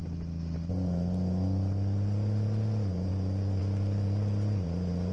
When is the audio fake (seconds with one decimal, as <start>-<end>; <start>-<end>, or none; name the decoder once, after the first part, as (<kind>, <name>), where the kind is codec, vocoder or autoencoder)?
none